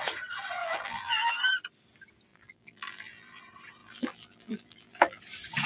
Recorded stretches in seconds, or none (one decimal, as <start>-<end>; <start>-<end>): 0.0-0.6; 1.3-2.3; 3.4-3.8; 5.2-5.7